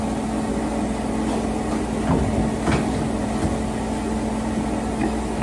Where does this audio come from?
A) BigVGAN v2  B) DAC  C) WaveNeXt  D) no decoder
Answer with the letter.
D